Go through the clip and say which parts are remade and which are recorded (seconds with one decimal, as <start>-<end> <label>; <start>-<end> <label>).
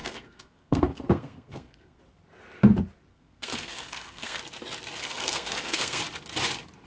0.0-2.0 remade; 2.0-3.1 recorded; 3.1-4.4 remade; 4.4-5.0 recorded; 5.0-6.0 remade; 6.0-6.9 recorded